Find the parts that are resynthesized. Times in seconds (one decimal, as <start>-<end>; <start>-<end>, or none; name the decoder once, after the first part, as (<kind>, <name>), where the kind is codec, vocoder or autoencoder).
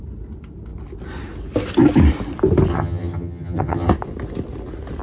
2.7-3.9 (vocoder, HiFi-GAN)